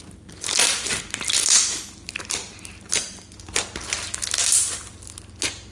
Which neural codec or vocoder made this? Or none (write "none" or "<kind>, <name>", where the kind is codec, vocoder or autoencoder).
none